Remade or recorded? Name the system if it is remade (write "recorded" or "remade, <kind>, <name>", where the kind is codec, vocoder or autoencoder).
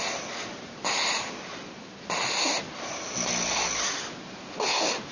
recorded